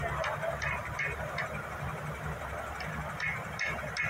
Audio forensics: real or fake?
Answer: real